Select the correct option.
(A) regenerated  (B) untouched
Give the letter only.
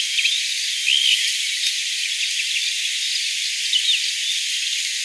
B